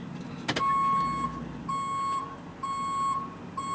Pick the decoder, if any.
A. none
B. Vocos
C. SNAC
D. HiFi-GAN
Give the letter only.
A